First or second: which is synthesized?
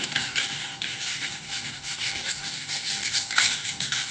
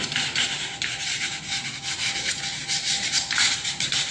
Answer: first